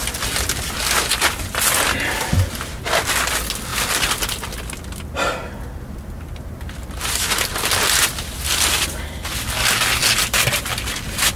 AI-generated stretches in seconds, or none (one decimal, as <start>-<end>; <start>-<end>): none

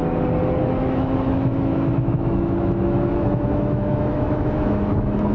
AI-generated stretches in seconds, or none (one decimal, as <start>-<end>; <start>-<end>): 0.7-5.3

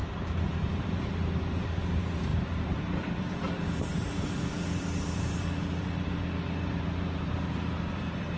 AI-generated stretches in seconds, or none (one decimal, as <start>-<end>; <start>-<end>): 0.0-8.4

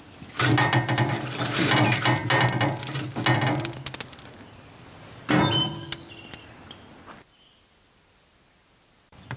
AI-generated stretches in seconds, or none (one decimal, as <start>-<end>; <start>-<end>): none

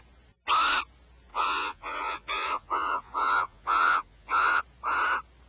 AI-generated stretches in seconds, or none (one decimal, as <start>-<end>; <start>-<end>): 1.3-4.6

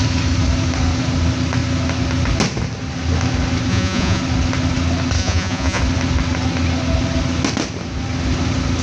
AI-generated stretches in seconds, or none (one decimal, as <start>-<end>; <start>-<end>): 3.7-4.2; 5.2-5.8

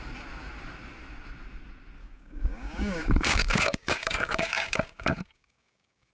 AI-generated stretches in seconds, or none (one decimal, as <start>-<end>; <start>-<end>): 2.0-6.1

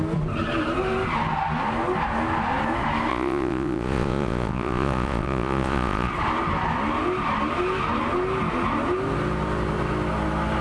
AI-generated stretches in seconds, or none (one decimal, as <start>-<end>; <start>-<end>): 3.1-6.1